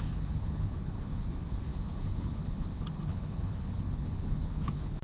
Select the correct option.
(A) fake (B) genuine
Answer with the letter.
A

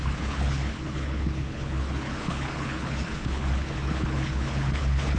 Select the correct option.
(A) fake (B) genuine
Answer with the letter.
A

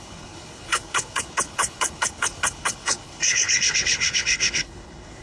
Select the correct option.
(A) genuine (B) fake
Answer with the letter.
B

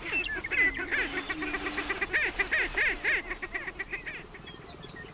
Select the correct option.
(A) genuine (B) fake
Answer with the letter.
A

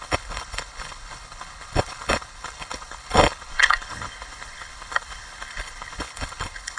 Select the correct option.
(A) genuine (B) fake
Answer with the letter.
B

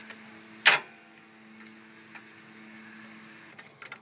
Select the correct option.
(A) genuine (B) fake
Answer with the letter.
A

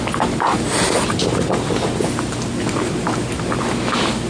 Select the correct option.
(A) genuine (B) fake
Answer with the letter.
A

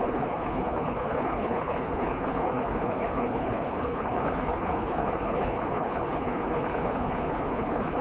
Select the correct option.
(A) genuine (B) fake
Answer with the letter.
B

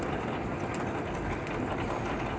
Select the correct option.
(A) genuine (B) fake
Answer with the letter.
A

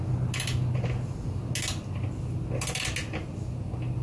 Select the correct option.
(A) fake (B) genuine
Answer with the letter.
B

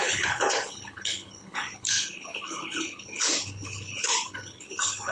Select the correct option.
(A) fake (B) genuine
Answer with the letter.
A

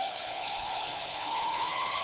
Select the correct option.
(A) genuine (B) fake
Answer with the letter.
B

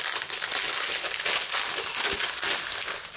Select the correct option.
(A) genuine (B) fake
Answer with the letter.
A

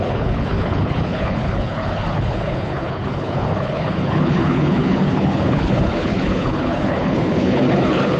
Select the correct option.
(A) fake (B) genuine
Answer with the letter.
A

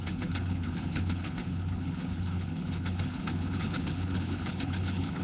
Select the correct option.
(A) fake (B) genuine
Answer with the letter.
A